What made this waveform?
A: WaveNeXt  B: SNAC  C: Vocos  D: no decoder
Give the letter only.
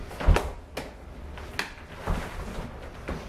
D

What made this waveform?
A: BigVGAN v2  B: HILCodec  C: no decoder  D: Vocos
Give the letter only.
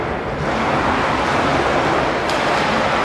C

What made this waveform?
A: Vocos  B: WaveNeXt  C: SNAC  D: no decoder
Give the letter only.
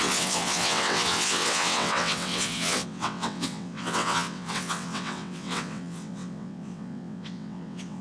B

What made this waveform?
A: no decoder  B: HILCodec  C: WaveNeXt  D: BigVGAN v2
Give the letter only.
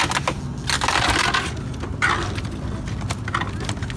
A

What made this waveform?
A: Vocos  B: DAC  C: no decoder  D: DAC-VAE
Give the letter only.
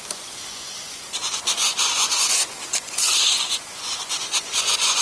A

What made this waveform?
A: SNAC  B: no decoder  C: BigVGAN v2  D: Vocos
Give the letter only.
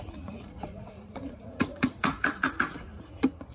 D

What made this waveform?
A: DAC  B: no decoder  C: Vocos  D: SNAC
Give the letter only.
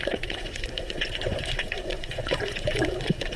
C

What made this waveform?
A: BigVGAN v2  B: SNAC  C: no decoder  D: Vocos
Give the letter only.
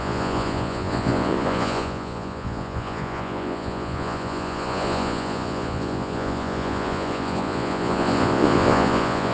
D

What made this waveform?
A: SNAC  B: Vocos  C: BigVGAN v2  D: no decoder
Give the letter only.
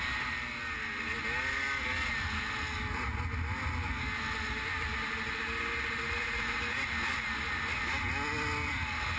D